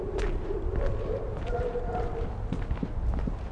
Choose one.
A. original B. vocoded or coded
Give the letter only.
A